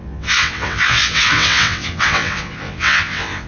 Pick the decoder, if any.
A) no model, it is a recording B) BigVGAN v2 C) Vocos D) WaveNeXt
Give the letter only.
D